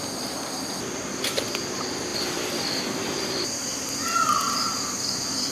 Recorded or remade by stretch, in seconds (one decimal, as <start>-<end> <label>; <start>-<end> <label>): 0.0-5.5 recorded